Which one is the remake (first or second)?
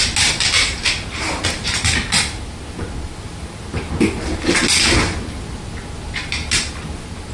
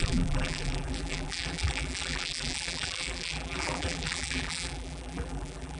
second